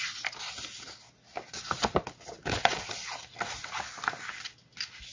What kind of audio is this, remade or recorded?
recorded